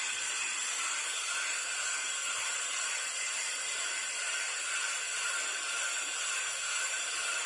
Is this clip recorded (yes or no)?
no